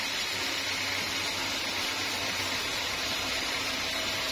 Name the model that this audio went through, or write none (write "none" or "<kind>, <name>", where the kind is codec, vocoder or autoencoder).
none